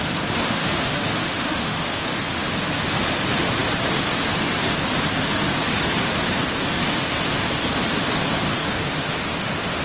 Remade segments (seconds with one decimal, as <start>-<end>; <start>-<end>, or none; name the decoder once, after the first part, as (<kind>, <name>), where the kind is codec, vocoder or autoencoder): 0.4-2.2 (autoencoder, DAC-VAE); 8.5-9.8